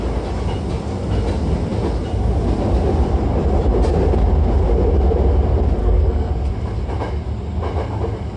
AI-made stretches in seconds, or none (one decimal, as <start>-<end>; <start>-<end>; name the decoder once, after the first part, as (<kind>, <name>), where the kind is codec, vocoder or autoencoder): 5.8-6.3 (codec, SNAC)